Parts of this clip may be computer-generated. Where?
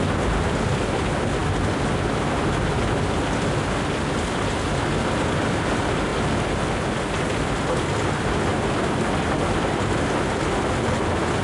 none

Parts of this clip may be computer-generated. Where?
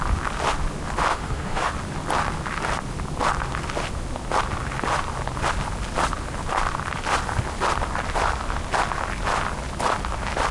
1.1-1.7 (autoencoder, DAC-VAE)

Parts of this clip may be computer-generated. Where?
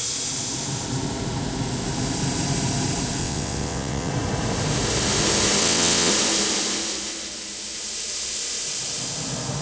3.2-4.1 (vocoder, WaveNeXt); 5.6-6.1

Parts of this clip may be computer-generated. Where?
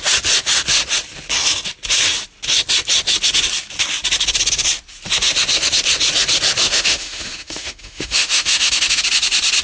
6.6-9.0 (autoencoder, DAC-VAE)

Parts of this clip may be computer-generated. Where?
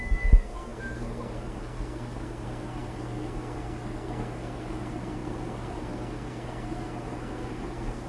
0.0-8.1 (codec, SNAC)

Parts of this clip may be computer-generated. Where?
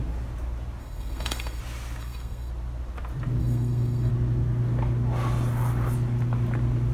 0.8-1.6 (codec, SNAC); 2.0-2.5; 3.4-4.1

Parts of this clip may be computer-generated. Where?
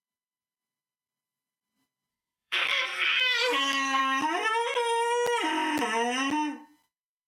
2.1-4.0 (codec, SNAC)